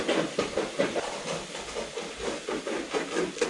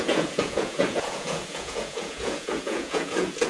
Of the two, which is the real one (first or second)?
first